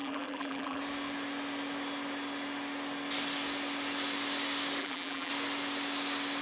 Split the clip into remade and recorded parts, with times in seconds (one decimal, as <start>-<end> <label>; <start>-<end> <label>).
0.0-0.8 remade; 0.8-4.8 recorded; 4.8-5.3 remade; 5.3-6.4 recorded